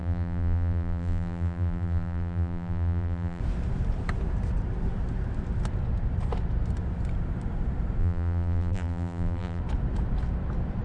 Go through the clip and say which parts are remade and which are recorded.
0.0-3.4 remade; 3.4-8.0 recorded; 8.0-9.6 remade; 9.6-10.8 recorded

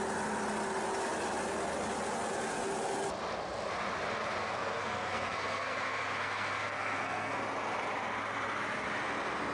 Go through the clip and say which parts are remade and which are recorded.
0.0-4.4 recorded; 4.4-7.4 remade; 7.4-9.5 recorded

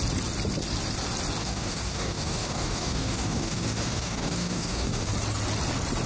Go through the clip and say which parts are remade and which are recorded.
0.0-1.4 recorded; 1.4-5.1 remade; 5.1-6.1 recorded

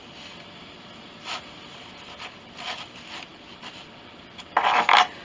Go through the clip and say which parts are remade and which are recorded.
0.0-5.2 recorded

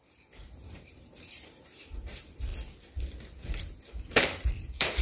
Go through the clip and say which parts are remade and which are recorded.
0.0-2.5 remade; 2.5-3.8 recorded; 3.8-5.0 remade

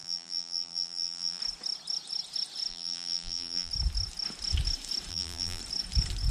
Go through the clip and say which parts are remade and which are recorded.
0.0-1.4 remade; 1.4-2.7 recorded; 2.7-3.7 remade; 3.7-5.1 recorded; 5.1-5.6 remade; 5.6-6.3 recorded